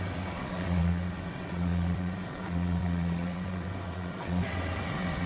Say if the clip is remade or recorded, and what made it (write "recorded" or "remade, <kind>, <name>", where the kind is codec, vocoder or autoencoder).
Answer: remade, vocoder, WaveNeXt